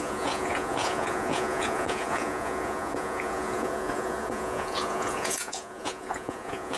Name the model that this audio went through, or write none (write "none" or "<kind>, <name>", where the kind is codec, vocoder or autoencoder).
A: vocoder, Vocos